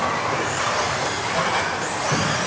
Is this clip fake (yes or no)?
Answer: no